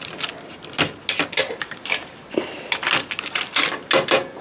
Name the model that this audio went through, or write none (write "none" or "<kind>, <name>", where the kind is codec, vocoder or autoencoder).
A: none